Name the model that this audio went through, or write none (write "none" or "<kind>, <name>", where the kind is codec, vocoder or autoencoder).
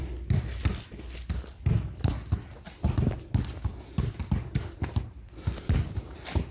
none